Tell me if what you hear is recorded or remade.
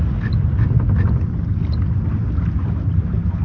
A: recorded